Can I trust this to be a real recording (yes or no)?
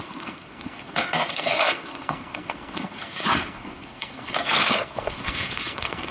no